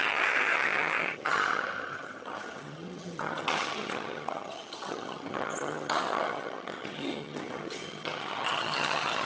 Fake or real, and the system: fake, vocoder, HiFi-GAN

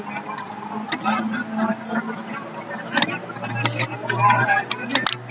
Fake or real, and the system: real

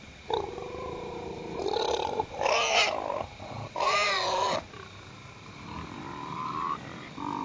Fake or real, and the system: real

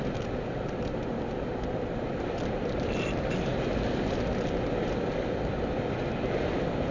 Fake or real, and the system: real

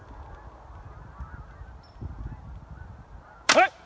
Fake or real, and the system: real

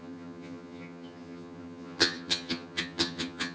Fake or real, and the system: fake, vocoder, HiFi-GAN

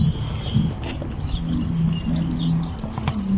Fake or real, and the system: real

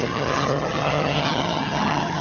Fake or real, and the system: fake, vocoder, HiFi-GAN